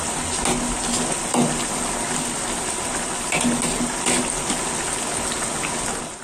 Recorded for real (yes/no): yes